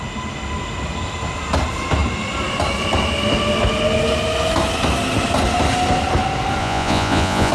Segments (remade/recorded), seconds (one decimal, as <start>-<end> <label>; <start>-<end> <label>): 0.0-6.6 recorded; 6.6-7.5 remade